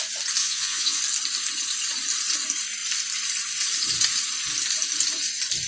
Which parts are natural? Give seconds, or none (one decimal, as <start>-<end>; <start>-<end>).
0.0-0.4; 1.0-5.7